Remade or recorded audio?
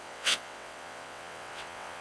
remade